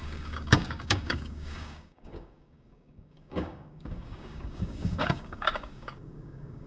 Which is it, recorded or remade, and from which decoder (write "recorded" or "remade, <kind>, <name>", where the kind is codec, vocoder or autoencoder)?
remade, codec, DAC